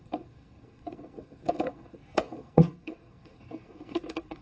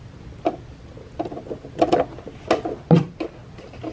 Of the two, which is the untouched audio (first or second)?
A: second